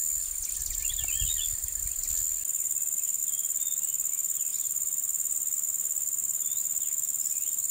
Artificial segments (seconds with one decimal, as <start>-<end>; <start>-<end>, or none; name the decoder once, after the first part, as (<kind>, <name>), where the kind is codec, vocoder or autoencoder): none